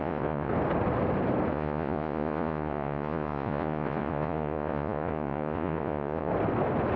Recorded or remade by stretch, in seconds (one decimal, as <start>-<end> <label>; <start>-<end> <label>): 0.0-0.5 remade; 0.5-1.5 recorded; 1.5-6.3 remade; 6.3-7.0 recorded